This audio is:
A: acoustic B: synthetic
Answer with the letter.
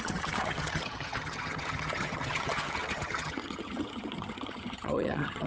B